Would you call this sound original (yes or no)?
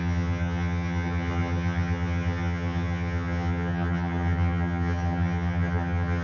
no